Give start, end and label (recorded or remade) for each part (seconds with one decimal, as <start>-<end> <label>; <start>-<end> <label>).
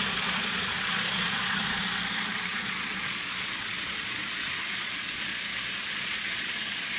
0.0-1.8 remade; 1.8-2.5 recorded; 2.5-5.3 remade; 5.3-5.9 recorded; 5.9-7.0 remade